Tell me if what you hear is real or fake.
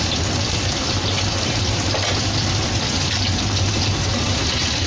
real